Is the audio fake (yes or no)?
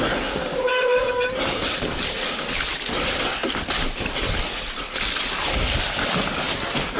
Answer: no